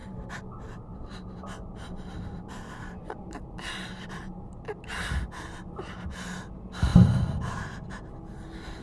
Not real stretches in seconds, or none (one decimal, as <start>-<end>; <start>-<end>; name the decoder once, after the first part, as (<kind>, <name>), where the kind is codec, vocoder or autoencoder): 0.0-4.8 (vocoder, BigVGAN v2); 6.9-7.4